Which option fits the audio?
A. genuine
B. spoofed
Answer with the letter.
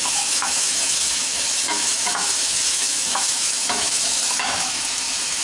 B